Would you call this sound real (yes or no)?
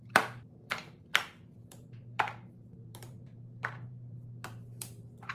no